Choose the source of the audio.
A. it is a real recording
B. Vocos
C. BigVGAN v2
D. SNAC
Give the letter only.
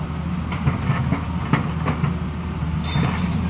C